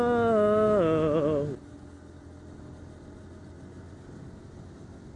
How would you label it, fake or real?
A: real